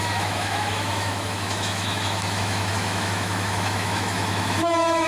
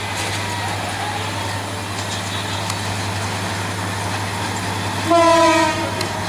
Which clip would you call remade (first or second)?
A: first